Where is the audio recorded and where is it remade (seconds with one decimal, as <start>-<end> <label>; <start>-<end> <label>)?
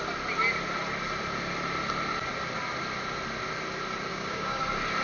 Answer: 0.0-4.1 recorded; 4.1-4.6 remade; 4.6-5.0 recorded